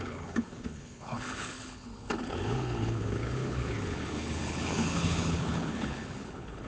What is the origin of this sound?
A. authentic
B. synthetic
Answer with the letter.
B